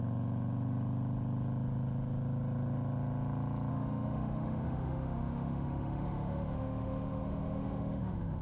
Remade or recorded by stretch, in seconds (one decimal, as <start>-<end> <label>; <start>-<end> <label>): 0.0-3.7 recorded; 3.7-8.4 remade

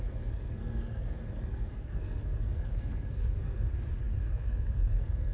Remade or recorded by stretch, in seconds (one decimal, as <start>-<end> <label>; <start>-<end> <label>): 0.0-3.7 remade; 3.7-4.2 recorded; 4.2-5.3 remade

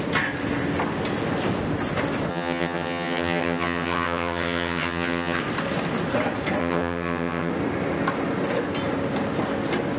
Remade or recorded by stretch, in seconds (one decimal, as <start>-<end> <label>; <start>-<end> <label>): 0.0-2.3 recorded; 2.3-5.4 remade; 5.4-6.6 recorded; 6.6-7.5 remade; 7.5-10.0 recorded

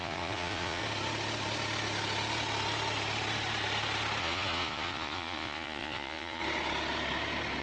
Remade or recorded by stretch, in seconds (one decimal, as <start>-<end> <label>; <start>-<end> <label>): 0.0-0.8 remade; 0.8-4.2 recorded; 4.2-6.4 remade; 6.4-7.6 recorded